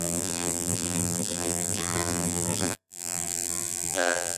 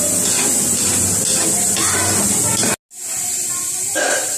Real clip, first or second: second